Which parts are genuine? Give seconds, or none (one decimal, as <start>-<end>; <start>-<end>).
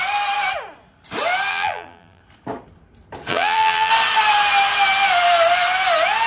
0.0-1.5; 2.2-3.3; 3.9-6.3